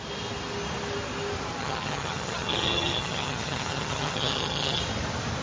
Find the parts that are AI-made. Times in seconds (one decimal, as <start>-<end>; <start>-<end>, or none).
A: 1.6-4.8